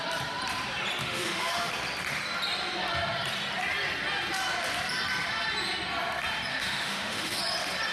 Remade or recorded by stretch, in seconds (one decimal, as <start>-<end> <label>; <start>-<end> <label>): 0.0-1.0 recorded; 1.0-1.7 remade; 1.7-6.5 recorded; 6.5-7.4 remade; 7.4-7.9 recorded